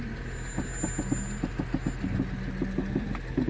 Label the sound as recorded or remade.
recorded